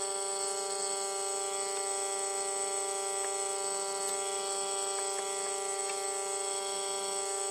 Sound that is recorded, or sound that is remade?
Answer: recorded